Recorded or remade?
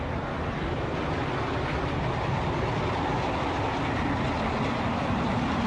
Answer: recorded